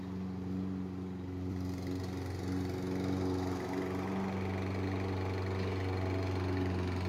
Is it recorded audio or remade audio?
recorded